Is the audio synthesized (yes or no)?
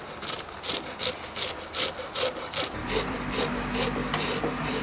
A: no